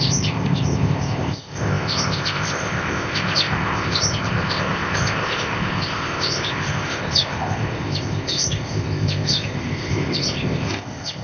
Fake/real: fake